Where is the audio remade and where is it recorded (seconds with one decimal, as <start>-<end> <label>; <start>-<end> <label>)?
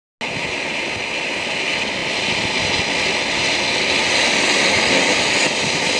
0.0-6.0 recorded